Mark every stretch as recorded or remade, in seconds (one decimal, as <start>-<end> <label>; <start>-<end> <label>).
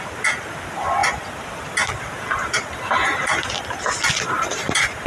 0.0-5.1 recorded